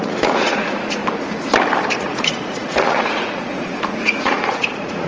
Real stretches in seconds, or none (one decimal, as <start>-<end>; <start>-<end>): 1.0-2.0